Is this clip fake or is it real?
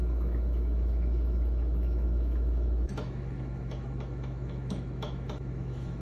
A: fake